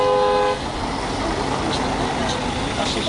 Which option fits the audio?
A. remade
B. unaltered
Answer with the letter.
B